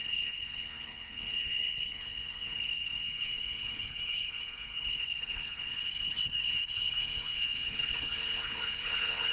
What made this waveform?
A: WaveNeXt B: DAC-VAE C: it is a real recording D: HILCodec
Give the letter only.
D